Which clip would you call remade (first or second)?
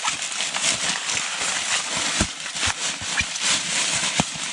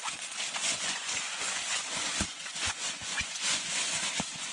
second